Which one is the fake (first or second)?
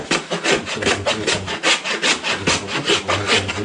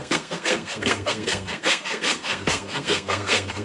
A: second